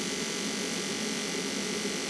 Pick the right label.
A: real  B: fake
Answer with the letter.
A